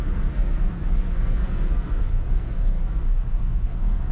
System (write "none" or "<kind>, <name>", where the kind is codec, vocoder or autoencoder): codec, SNAC